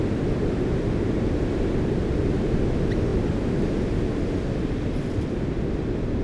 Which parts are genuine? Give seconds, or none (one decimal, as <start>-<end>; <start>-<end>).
0.0-3.1; 3.6-6.2